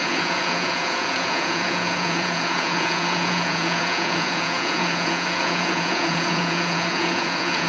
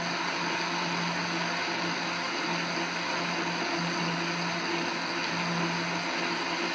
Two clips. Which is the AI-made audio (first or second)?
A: first